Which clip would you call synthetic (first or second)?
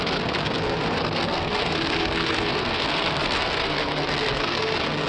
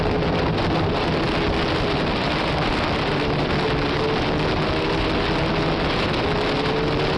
first